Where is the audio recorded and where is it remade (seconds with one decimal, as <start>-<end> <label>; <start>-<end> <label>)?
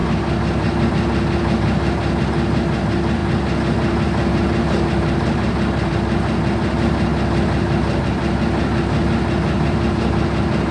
0.0-10.7 recorded